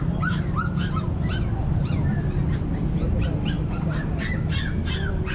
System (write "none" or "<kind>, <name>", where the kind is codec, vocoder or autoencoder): none